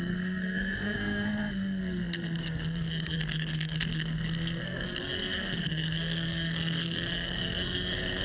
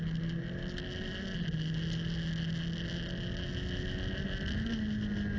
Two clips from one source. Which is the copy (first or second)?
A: first